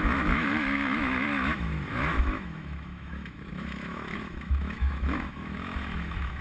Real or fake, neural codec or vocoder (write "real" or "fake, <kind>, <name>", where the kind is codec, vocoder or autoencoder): fake, autoencoder, DAC-VAE